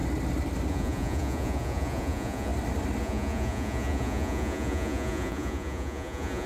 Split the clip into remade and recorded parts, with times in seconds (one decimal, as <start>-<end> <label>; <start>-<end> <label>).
0.0-0.7 recorded; 0.7-2.5 remade; 2.5-3.0 recorded; 3.0-6.5 remade